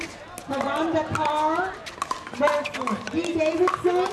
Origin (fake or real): real